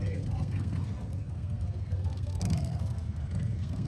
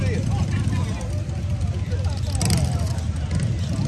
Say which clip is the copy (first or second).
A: first